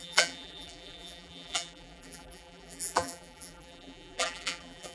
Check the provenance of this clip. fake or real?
fake